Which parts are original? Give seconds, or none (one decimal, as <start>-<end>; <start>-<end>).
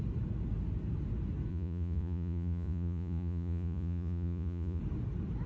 0.0-1.5; 4.8-5.5